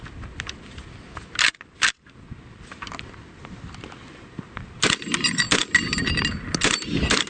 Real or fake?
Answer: real